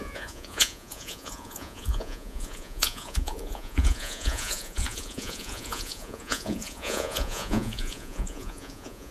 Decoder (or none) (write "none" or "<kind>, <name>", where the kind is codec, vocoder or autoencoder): vocoder, Vocos